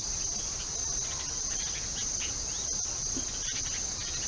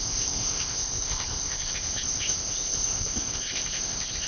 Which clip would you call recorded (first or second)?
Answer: first